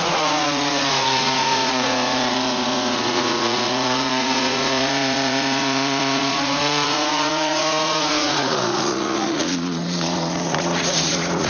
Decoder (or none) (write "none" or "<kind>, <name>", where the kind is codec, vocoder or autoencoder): vocoder, Vocos